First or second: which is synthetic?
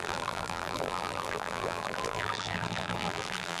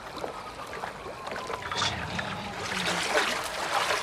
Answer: first